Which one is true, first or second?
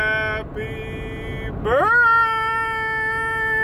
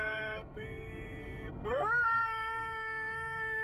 first